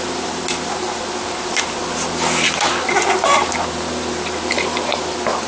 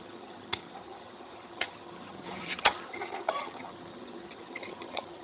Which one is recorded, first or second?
first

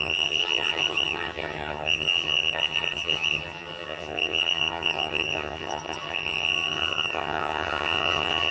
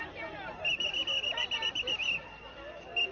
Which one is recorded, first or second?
second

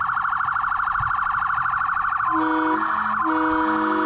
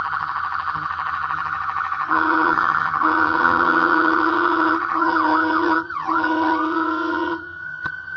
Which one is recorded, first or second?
first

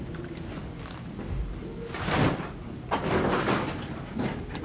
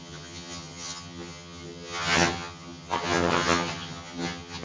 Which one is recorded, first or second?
first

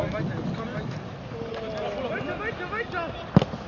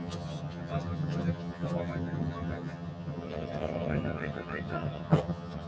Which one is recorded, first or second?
first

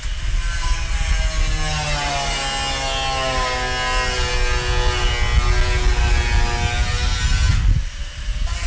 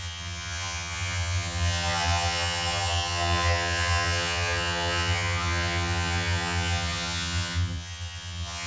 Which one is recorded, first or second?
first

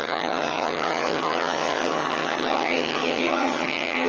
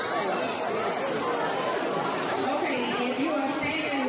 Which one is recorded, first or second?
second